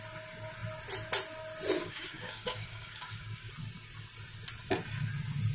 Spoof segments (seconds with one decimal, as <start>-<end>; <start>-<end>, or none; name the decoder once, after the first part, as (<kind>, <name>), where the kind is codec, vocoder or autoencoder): 1.8-3.5 (codec, DAC)